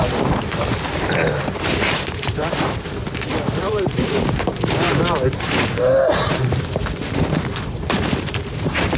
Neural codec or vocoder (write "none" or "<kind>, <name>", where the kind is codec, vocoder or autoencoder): vocoder, BigVGAN v2